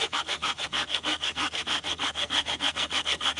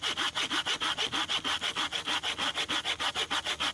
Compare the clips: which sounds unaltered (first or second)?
second